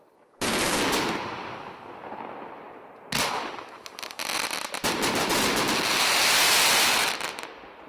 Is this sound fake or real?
real